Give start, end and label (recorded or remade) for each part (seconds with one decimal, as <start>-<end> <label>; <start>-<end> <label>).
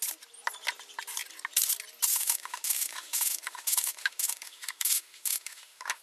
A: 0.0-2.1 recorded; 2.1-6.0 remade